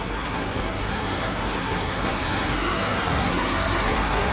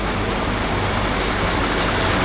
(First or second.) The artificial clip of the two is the first